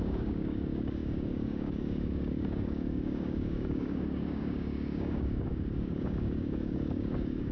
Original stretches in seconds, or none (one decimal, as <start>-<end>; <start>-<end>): none